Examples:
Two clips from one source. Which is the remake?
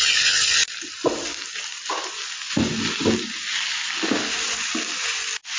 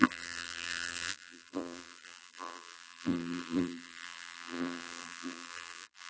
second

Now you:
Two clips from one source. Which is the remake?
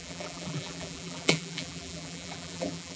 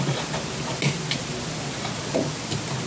first